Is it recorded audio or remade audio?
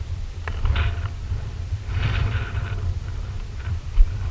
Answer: remade